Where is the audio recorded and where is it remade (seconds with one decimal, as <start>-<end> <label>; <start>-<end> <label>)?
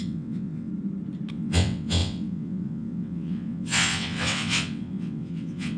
0.0-0.7 remade; 0.7-1.3 recorded; 1.3-5.8 remade